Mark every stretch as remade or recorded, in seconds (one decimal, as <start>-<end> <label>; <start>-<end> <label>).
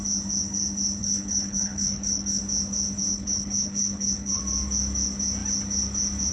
0.0-1.0 recorded; 1.0-2.4 remade; 2.4-3.1 recorded; 3.1-4.4 remade; 4.4-6.3 recorded